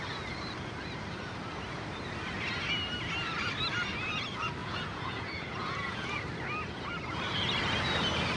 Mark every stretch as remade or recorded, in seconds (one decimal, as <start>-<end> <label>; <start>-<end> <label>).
0.0-4.6 recorded; 4.6-6.2 remade; 6.2-8.4 recorded